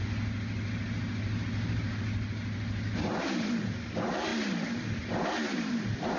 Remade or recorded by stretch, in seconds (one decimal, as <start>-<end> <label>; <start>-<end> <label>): 0.0-6.2 recorded